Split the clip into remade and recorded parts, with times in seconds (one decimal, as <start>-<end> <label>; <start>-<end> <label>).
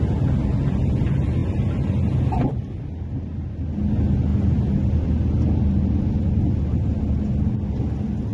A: 0.0-8.3 recorded